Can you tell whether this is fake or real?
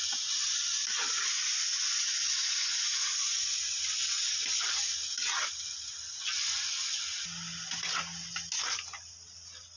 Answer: real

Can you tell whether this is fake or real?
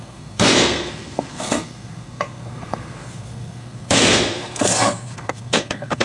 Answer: fake